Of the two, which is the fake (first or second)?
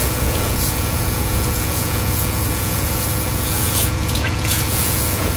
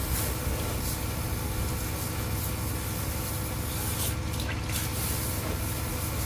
first